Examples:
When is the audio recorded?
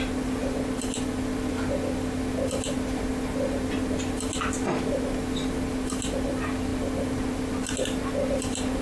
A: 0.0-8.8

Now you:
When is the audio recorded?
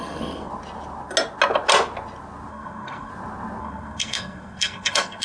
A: 0.5-2.5; 3.1-3.6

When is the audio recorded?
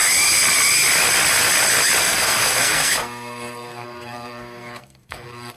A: 0.0-2.0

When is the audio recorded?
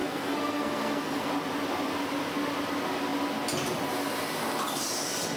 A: 1.3-5.4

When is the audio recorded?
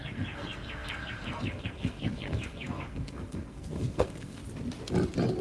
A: 4.4-5.4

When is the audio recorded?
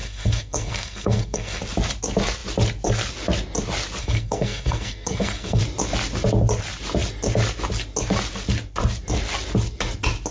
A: 1.6-4.0; 5.6-10.3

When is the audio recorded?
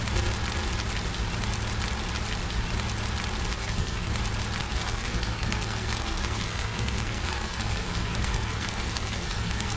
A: 0.0-3.5; 4.1-4.6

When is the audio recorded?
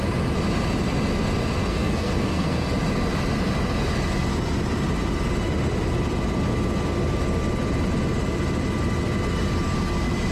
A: 0.0-1.6; 2.7-10.3